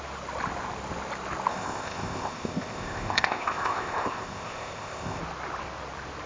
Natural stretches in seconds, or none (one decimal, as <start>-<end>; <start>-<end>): 0.0-1.5; 5.2-6.3